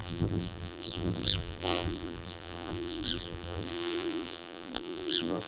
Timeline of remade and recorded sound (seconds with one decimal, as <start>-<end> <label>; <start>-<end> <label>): 0.0-5.5 remade